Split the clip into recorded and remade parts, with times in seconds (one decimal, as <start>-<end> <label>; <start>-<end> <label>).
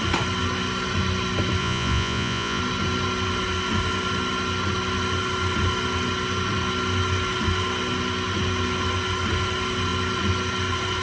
0.0-1.6 recorded; 1.6-2.6 remade; 2.6-11.0 recorded